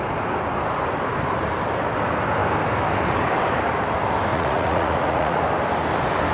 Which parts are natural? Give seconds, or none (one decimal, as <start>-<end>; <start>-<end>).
0.0-4.3; 5.4-6.3